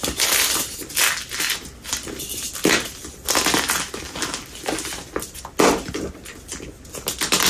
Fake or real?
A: real